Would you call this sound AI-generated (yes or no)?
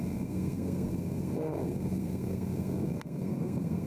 yes